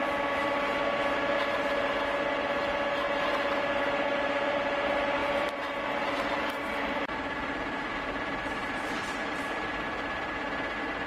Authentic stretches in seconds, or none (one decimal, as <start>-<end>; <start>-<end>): 0.0-5.2; 8.8-11.1